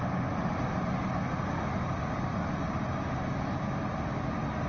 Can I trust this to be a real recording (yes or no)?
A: yes